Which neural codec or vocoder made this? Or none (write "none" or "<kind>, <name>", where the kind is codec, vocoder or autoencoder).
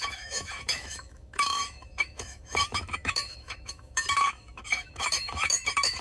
autoencoder, DAC-VAE